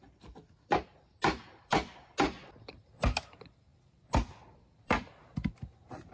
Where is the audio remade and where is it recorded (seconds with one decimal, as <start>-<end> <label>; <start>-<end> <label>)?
0.0-6.1 recorded